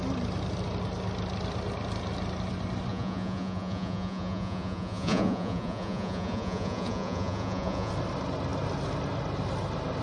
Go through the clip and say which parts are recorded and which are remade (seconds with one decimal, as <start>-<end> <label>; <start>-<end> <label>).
0.0-2.9 recorded; 2.9-7.9 remade; 7.9-10.0 recorded